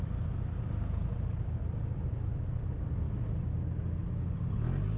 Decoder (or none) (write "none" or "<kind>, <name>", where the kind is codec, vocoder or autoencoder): none